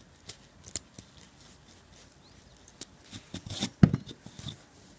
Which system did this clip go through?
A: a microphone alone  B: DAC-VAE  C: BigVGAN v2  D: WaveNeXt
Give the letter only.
A